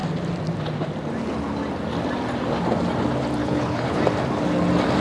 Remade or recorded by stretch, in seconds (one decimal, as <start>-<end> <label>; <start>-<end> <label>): 0.0-3.4 recorded; 3.4-4.0 remade; 4.0-5.0 recorded